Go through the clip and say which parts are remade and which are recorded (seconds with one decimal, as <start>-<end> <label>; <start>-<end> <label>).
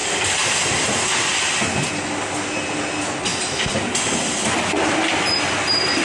0.0-6.0 recorded